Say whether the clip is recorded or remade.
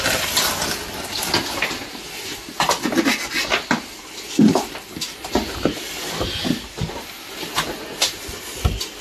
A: recorded